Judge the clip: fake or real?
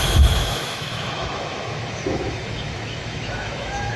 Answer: fake